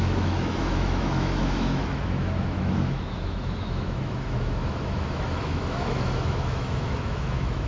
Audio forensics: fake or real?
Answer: fake